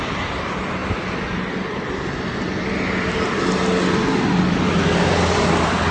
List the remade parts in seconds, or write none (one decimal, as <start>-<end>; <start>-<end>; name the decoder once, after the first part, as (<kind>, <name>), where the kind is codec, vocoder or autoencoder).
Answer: none